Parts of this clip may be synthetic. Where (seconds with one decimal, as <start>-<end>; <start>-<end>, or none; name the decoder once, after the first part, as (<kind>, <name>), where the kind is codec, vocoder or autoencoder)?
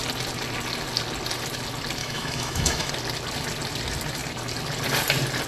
2.0-2.9 (autoencoder, DAC-VAE)